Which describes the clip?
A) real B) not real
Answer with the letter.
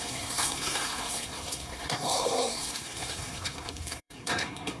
B